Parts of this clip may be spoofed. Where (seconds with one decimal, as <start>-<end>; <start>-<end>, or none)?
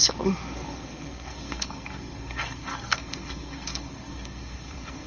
0.0-5.1